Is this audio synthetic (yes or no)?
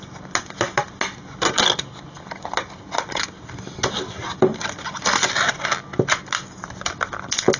no